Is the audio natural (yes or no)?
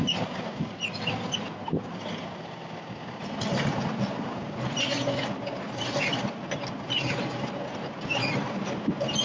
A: yes